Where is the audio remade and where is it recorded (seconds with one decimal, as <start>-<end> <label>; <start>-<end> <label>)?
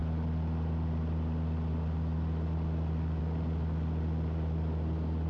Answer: 0.0-5.3 recorded